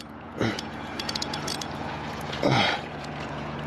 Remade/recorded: remade